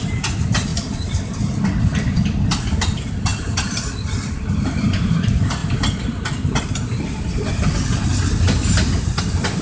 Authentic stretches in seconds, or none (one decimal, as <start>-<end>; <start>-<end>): 0.0-9.6